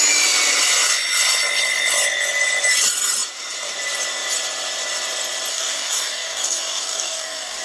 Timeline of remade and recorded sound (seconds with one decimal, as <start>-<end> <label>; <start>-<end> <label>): 0.0-5.5 recorded; 5.5-7.6 remade